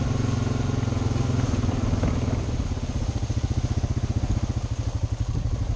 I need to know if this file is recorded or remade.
recorded